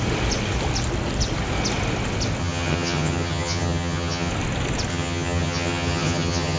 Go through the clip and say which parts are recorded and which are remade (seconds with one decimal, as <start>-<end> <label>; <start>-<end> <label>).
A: 0.0-2.4 recorded; 2.4-4.3 remade; 4.3-4.9 recorded; 4.9-6.6 remade